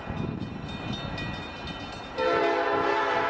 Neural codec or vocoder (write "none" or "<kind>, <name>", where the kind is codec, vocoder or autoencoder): none